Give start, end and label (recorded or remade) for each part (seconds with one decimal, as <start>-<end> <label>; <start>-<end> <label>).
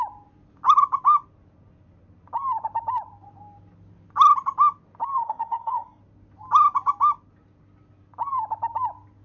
0.0-5.1 recorded; 5.1-6.0 remade; 6.0-9.2 recorded